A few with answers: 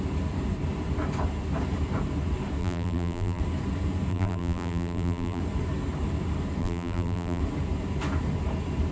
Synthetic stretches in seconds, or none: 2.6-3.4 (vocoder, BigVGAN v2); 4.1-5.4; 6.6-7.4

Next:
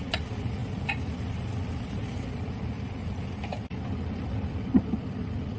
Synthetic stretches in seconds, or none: 0.0-5.6 (vocoder, BigVGAN v2)

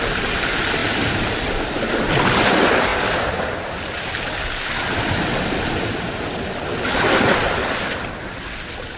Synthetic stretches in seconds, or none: 0.8-1.9 (vocoder, BigVGAN v2); 2.9-5.1

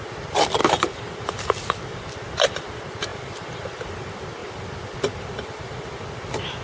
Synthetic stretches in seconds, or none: 0.6-2.0 (vocoder, BigVGAN v2); 4.4-5.3

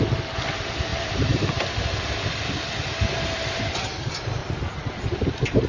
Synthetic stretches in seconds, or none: 0.9-1.5 (vocoder, BigVGAN v2)

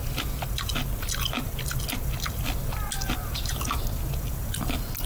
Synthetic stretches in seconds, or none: none